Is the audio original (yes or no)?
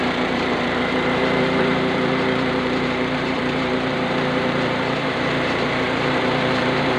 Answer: no